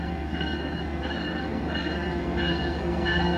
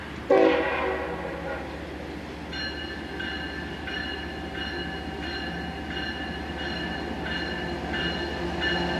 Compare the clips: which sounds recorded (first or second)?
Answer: second